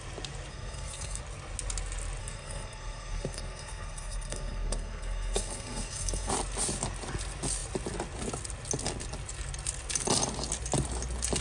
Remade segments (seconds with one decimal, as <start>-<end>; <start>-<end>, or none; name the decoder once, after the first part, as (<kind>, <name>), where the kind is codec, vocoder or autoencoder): 0.5-1.2 (codec, SNAC); 2.2-6.3